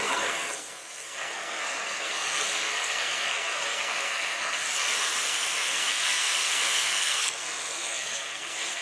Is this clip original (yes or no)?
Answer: no